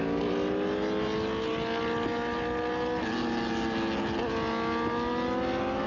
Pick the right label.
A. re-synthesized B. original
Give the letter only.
B